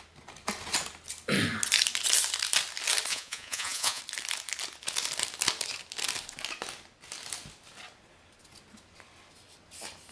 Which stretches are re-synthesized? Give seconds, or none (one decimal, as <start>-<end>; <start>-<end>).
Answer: 3.1-4.0